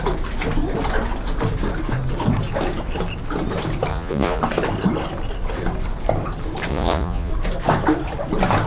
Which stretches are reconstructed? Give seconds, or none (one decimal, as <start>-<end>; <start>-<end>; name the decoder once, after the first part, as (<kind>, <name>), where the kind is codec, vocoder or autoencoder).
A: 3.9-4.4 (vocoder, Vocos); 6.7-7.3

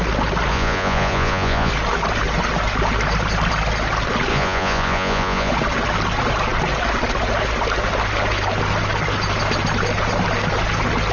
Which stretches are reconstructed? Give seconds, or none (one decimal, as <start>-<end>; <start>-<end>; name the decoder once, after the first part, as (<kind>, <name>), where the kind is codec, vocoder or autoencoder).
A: 0.5-1.7 (vocoder, Vocos); 4.3-5.5

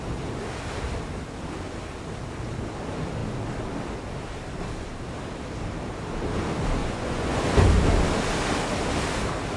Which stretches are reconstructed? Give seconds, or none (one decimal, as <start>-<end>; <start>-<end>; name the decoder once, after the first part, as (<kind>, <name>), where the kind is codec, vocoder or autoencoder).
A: 6.8-7.4 (vocoder, Vocos)

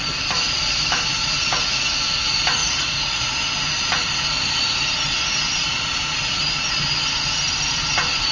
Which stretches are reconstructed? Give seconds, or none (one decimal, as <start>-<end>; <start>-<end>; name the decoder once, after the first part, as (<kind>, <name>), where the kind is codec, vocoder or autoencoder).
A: 1.1-1.9 (vocoder, Vocos); 2.6-3.3

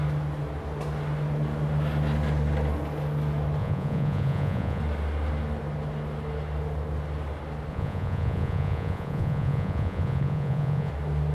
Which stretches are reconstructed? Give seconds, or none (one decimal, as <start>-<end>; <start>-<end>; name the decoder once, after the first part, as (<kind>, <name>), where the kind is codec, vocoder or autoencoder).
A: 3.6-4.8 (vocoder, Vocos); 7.7-10.9

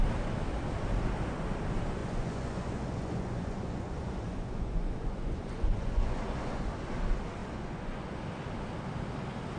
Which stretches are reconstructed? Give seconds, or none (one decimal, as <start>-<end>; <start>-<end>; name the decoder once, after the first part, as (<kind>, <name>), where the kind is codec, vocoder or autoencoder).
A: 2.0-6.6 (vocoder, Vocos); 7.4-8.2

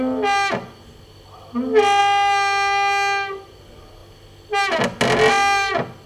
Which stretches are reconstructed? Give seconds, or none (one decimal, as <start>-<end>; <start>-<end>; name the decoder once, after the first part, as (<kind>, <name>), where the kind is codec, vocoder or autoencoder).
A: none

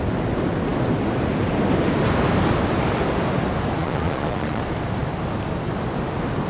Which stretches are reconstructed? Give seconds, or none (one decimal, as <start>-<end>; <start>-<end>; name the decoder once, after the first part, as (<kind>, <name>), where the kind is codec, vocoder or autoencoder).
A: 3.8-4.6 (vocoder, Vocos)